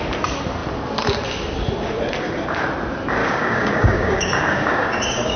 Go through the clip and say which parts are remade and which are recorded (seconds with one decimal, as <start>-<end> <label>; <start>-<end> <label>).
0.0-3.2 recorded; 3.2-5.4 remade